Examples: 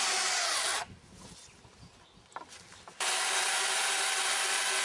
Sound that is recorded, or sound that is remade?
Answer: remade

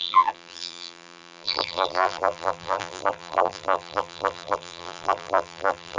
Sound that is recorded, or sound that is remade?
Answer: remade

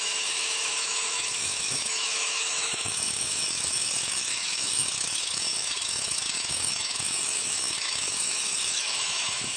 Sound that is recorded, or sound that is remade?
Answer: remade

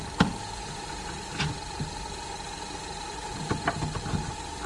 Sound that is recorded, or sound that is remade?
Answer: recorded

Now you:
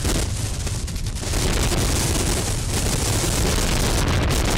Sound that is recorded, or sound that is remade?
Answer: recorded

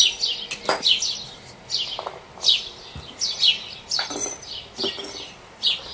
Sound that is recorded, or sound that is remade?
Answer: recorded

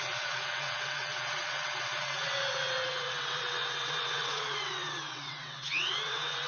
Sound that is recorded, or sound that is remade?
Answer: remade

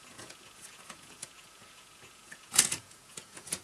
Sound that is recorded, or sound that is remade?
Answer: remade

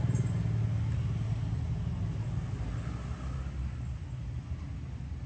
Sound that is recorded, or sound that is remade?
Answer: recorded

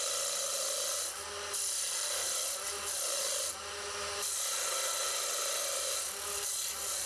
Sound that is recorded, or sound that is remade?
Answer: recorded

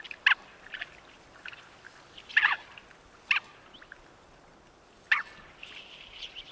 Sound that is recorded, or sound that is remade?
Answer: recorded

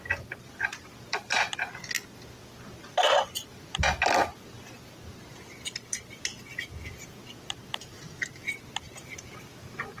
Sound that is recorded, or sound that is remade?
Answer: recorded